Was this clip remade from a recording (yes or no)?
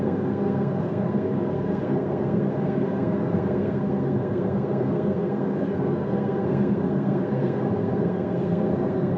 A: yes